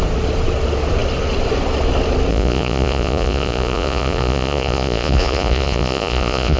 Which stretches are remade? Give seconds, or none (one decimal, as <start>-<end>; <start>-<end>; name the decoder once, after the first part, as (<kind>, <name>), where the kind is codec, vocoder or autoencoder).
2.3-6.6 (vocoder, Vocos)